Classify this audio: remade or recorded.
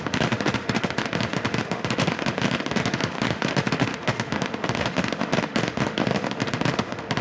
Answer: remade